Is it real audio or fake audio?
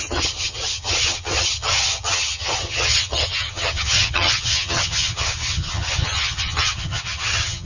fake